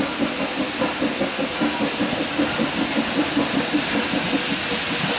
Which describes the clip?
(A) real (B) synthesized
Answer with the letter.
A